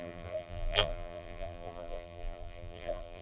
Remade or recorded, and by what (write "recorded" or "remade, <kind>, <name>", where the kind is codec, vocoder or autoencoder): remade, vocoder, BigVGAN v2